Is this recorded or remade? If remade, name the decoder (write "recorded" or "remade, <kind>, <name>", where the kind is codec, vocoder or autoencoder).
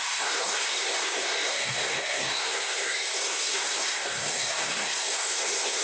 remade, codec, SNAC